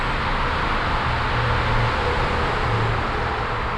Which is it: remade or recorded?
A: recorded